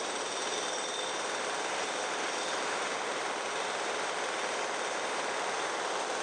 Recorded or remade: recorded